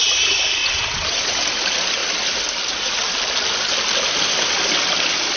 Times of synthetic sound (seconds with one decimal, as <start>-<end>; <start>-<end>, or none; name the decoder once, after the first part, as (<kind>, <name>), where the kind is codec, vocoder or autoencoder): 0.6-1.4 (vocoder, WaveNeXt)